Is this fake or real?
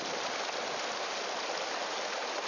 real